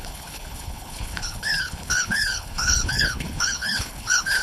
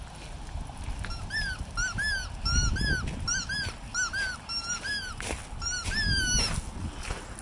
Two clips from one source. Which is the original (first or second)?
second